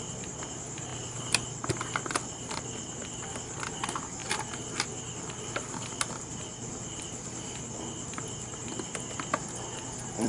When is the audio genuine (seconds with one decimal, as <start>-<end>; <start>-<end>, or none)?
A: 0.0-0.9; 2.6-4.2; 9.0-10.3